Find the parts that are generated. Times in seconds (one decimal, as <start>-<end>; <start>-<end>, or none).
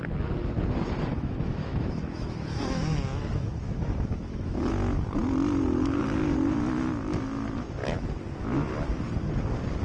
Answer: 1.1-4.7